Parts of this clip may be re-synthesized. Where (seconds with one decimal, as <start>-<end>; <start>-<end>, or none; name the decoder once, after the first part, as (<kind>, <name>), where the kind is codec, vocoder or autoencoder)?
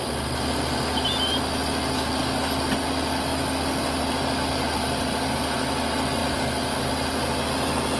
none